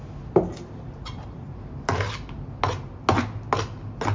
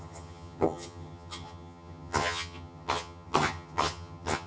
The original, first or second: first